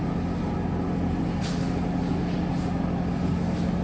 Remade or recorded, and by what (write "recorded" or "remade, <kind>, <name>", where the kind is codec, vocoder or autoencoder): recorded